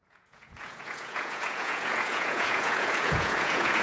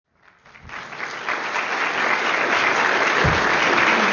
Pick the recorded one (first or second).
second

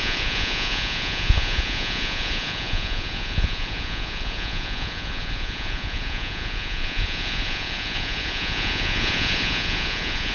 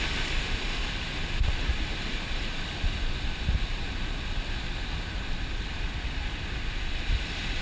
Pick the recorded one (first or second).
second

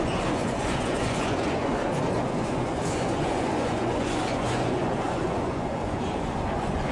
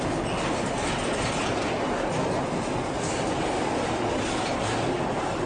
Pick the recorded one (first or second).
second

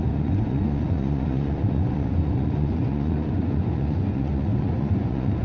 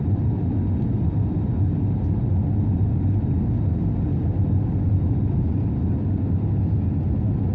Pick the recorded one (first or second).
second